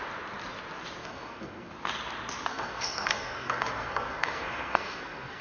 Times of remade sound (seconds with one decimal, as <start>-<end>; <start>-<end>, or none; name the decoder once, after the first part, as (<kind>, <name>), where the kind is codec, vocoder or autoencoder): 1.0-1.7 (codec, SNAC); 2.5-5.4